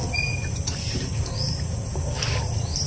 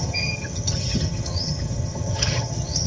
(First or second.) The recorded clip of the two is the first